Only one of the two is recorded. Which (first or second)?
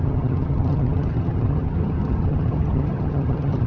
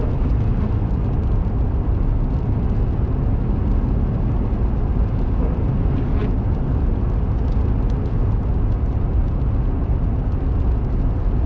second